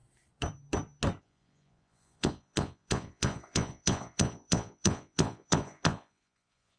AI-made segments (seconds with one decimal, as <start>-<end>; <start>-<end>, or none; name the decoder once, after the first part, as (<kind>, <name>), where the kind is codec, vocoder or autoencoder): 1.2-6.8 (vocoder, Vocos)